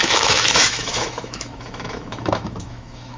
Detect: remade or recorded remade